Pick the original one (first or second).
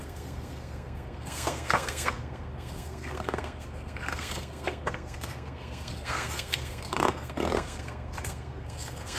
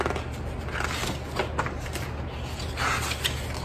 second